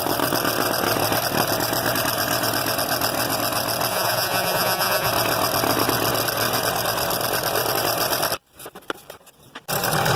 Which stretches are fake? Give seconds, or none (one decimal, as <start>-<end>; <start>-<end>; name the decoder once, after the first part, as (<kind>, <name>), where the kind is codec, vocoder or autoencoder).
3.9-5.1 (vocoder, Vocos)